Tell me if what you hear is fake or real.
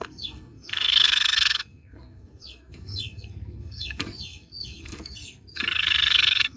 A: fake